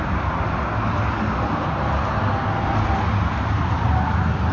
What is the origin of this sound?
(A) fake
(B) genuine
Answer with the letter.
B